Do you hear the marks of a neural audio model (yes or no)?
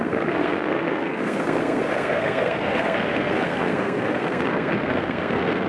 yes